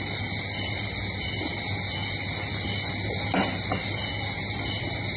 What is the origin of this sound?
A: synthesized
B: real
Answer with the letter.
B